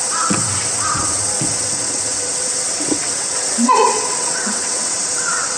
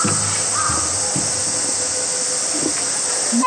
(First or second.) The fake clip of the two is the first